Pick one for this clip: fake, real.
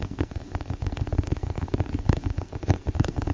fake